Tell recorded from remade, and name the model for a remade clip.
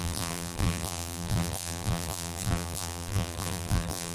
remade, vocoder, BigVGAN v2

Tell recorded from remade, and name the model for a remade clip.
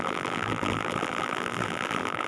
remade, vocoder, BigVGAN v2